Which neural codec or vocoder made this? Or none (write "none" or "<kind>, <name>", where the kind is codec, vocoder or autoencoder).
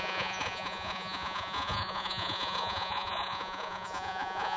vocoder, Vocos